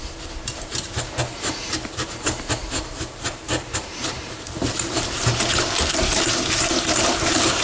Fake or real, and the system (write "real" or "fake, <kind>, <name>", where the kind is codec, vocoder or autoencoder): fake, vocoder, BigVGAN v2